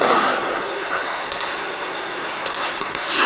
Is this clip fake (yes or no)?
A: yes